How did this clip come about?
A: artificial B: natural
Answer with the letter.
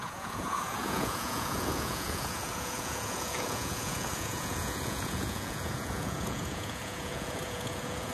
A